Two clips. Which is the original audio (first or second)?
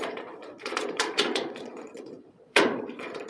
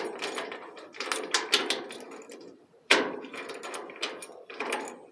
second